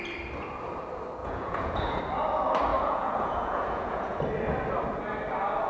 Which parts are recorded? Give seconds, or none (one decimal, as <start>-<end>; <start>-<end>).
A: 0.0-1.2; 2.0-2.7; 4.2-5.7